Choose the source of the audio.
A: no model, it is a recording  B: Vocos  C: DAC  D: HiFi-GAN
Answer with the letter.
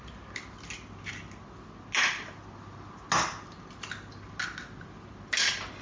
A